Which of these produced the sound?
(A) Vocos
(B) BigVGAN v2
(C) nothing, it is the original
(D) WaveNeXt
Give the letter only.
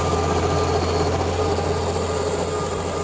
C